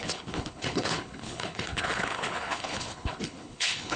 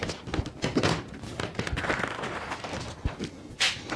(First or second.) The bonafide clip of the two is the second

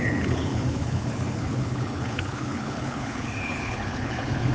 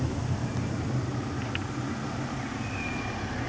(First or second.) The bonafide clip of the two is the second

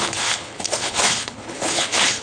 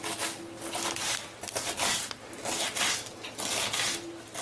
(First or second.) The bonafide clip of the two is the second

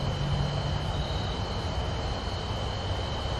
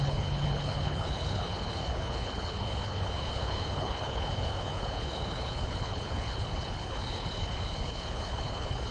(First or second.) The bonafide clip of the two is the first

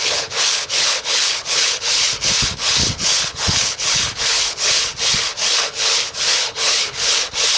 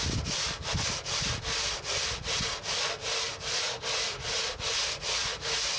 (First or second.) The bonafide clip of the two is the second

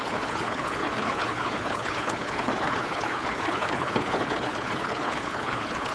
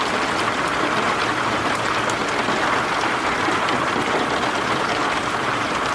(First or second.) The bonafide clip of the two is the second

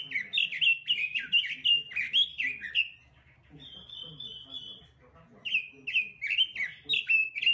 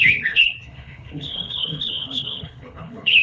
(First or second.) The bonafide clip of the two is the first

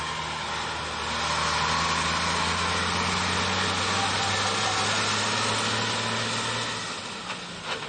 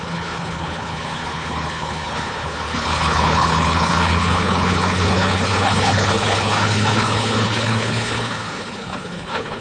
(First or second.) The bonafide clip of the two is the first